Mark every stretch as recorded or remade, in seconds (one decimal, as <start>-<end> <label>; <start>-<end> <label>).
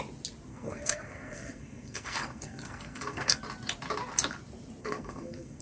0.0-0.5 recorded; 0.5-3.4 remade; 3.4-4.8 recorded; 4.8-5.6 remade